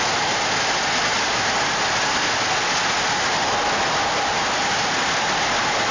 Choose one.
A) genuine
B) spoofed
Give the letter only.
A